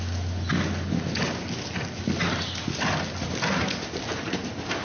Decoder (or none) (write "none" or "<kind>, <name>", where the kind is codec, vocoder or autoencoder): none